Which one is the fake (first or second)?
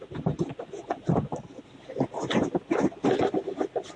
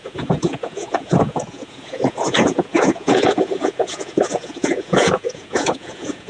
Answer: second